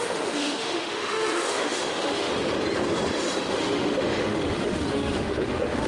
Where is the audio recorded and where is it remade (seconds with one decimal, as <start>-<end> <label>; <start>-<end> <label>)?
0.0-2.3 remade; 2.3-3.5 recorded; 3.5-5.9 remade